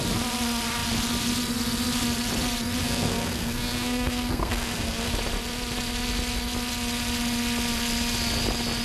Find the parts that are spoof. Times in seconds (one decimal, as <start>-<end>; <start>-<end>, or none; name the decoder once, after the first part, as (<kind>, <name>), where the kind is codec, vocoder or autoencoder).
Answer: 2.8-5.1 (codec, SNAC)